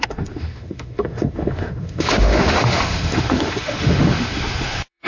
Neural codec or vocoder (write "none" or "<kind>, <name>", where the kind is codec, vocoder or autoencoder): autoencoder, DAC-VAE